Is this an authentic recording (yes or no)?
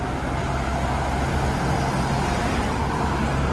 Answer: yes